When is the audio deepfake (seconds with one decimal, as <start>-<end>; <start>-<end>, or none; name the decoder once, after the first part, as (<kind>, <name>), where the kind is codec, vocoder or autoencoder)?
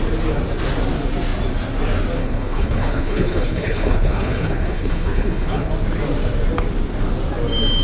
2.2-5.7 (codec, HILCodec)